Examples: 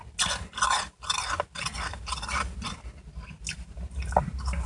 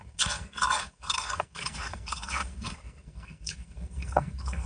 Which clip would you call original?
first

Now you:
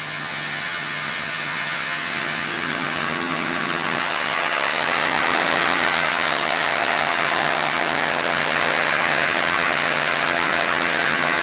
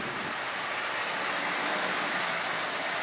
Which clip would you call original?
second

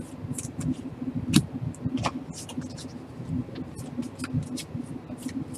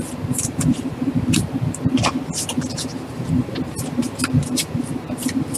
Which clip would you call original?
first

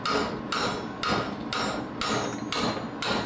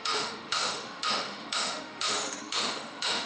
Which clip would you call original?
first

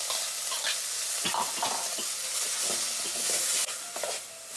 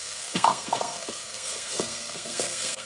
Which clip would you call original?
first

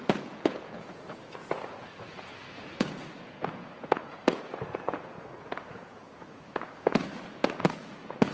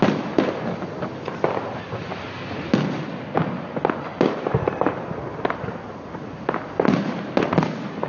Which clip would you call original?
second